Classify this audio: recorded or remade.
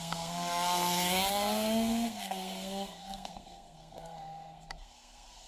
remade